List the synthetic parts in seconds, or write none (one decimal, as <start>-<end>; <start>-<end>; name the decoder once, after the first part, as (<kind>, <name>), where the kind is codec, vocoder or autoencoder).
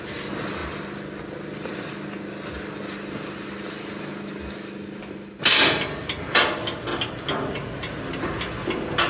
none